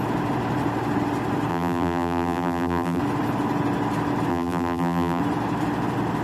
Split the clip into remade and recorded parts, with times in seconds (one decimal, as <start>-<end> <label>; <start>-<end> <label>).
0.0-1.5 recorded; 1.5-3.0 remade; 3.0-4.3 recorded; 4.3-5.2 remade; 5.2-6.2 recorded